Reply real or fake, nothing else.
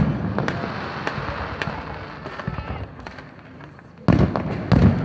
real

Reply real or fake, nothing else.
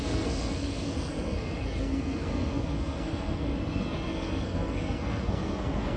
fake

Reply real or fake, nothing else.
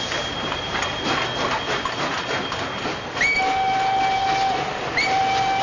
real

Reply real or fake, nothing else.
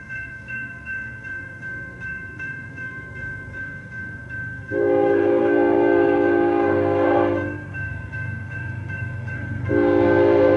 fake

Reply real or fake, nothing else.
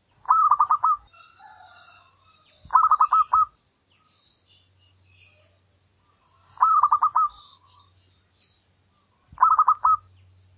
real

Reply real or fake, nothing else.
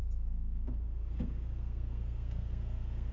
fake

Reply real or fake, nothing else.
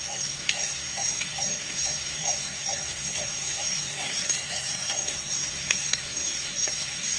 fake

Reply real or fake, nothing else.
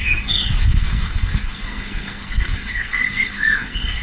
fake